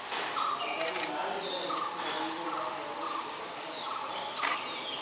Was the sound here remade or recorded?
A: recorded